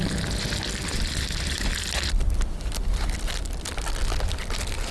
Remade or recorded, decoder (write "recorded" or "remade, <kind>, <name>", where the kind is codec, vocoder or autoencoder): recorded